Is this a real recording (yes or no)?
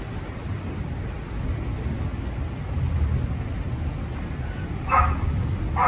yes